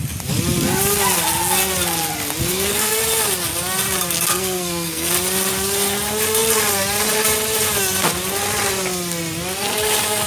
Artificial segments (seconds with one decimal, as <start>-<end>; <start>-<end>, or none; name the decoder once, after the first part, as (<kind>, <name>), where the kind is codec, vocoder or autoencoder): 2.4-3.0 (codec, SNAC); 4.3-5.1

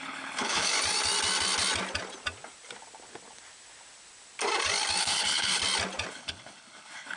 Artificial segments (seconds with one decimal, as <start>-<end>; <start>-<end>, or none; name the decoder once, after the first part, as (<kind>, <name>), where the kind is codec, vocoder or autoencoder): 0.0-0.7 (codec, HILCodec); 5.0-5.6; 6.1-7.2

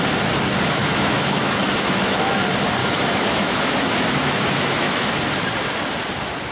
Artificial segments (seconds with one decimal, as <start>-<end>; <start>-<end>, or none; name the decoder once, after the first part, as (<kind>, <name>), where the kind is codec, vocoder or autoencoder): 0.8-2.3 (autoencoder, DAC-VAE); 2.8-5.1

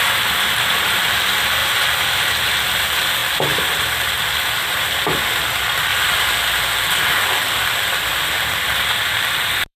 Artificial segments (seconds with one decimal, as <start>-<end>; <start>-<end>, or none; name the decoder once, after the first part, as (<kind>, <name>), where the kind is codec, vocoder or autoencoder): 1.6-2.3 (vocoder, BigVGAN v2); 3.2-4.6; 5.9-9.8

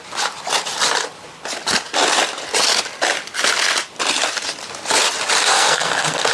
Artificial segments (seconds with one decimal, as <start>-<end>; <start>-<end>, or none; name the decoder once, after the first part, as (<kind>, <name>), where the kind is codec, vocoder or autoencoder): 5.5-6.3 (codec, SNAC)

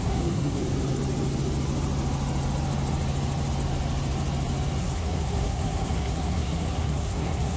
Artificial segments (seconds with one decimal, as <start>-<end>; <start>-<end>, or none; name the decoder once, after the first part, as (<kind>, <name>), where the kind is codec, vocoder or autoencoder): 0.0-0.6 (codec, SNAC); 4.8-7.6